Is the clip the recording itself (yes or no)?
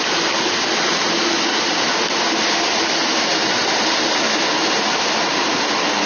yes